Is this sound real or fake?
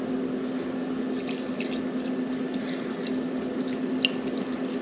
real